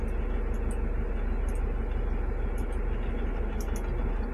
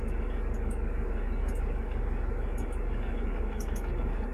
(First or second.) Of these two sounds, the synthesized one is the second